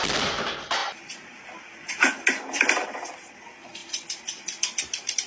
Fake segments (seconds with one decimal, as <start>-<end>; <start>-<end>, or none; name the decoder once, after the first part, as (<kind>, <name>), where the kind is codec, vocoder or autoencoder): none